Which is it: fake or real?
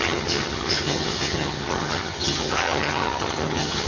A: fake